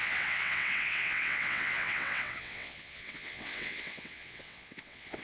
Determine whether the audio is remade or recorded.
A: remade